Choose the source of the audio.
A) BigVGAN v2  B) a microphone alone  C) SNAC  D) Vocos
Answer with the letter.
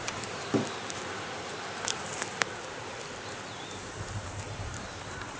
A